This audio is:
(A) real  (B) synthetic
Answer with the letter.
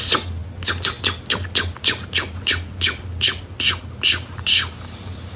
A